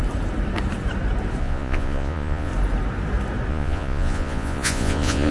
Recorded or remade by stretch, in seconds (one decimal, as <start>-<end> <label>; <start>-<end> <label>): 0.0-1.4 recorded; 1.4-2.5 remade; 2.5-3.5 recorded; 3.5-5.3 remade